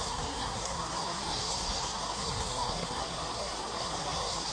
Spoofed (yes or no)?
yes